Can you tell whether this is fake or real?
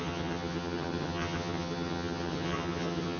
fake